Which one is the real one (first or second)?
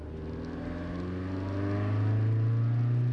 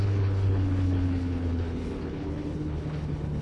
first